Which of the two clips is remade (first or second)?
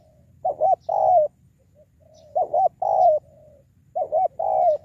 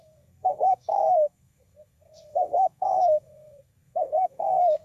second